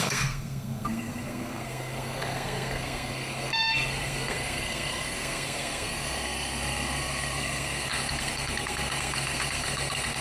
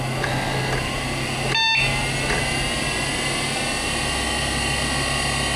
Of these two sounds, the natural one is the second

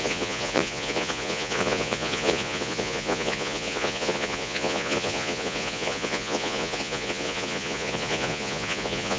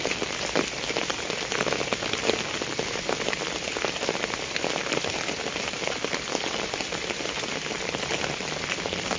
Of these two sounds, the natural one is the second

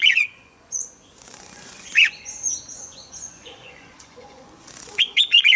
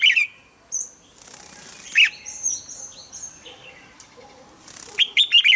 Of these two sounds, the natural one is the second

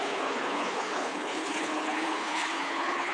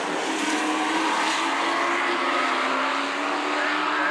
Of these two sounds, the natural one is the second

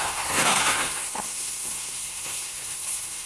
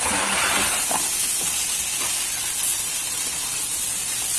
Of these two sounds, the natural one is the second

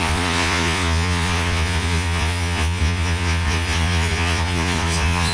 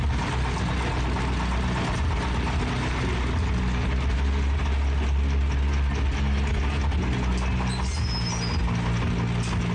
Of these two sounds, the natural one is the second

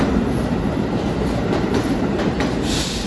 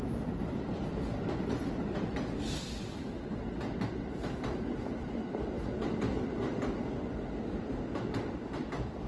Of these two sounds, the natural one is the second